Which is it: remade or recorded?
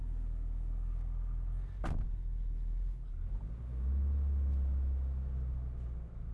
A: recorded